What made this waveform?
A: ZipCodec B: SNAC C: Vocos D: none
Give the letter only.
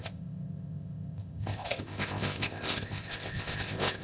A